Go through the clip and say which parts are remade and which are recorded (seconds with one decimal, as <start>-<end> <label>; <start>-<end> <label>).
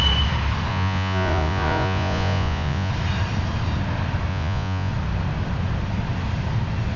0.0-0.7 recorded; 0.7-2.9 remade; 2.9-4.3 recorded; 4.3-4.9 remade; 4.9-7.0 recorded